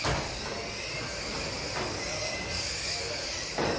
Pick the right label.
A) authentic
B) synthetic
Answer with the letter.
A